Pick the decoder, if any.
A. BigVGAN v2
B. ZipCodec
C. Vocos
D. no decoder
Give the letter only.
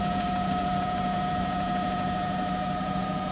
C